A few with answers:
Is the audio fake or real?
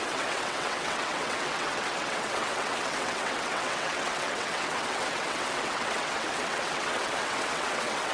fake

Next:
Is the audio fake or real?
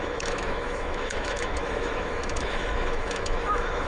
fake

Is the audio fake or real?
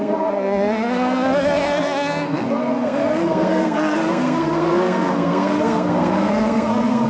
fake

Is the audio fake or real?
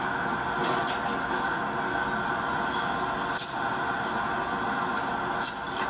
real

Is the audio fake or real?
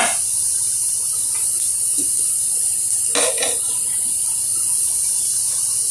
real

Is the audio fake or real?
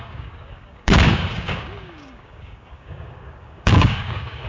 fake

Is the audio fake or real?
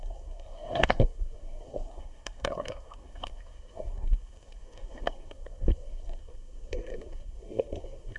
fake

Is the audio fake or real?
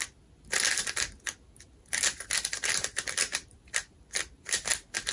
real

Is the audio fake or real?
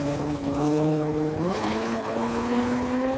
fake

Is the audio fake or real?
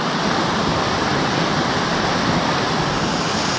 real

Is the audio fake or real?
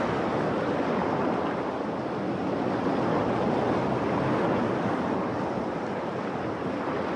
real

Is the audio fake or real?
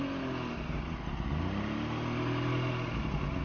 real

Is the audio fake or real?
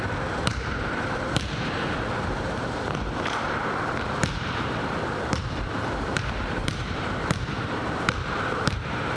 fake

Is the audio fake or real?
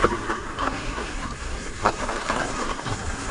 fake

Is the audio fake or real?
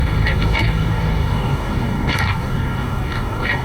fake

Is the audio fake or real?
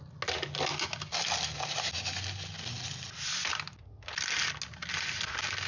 real